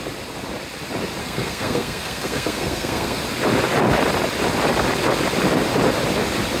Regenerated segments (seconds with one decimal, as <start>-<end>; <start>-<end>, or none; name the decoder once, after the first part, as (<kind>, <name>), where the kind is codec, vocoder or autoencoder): 1.2-3.2 (codec, SNAC)